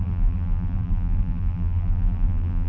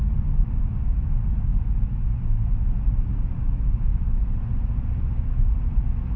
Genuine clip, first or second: second